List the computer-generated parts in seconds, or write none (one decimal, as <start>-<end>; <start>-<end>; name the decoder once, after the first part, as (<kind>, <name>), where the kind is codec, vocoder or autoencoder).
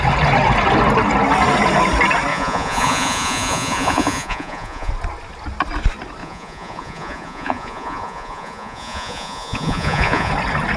2.3-4.9 (vocoder, Vocos); 6.2-10.3